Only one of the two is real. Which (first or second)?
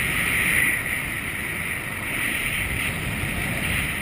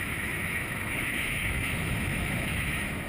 first